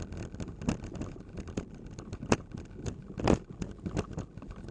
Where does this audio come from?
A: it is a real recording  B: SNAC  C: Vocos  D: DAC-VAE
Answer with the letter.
A